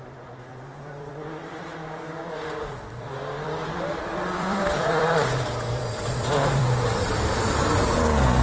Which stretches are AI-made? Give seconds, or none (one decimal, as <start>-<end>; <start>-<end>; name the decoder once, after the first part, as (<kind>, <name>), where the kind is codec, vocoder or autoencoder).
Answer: 0.5-1.1 (vocoder, BigVGAN v2); 2.2-6.6